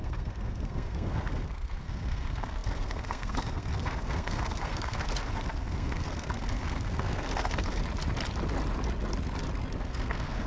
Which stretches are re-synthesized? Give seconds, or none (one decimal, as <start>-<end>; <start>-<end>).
0.0-7.8; 9.8-10.5